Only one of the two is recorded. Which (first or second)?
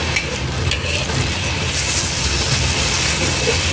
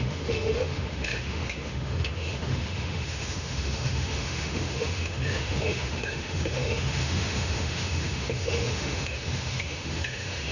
first